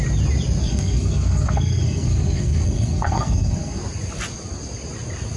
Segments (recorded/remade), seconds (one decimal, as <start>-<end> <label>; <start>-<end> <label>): 0.0-0.6 recorded; 0.6-3.8 remade; 3.8-5.4 recorded